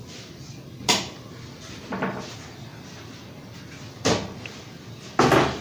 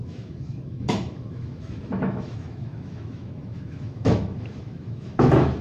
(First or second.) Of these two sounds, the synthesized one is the second